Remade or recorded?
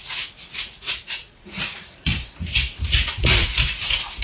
remade